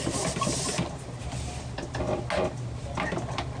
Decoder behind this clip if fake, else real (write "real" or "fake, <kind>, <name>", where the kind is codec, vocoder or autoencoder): real